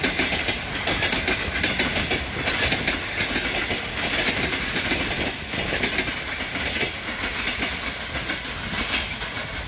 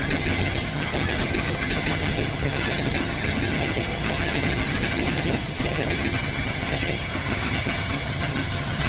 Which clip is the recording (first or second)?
first